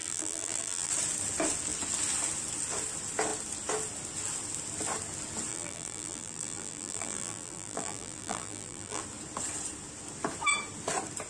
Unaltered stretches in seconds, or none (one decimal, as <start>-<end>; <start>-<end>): 0.9-5.5; 9.0-11.3